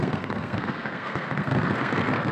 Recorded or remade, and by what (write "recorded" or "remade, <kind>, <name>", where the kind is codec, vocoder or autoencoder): remade, codec, SNAC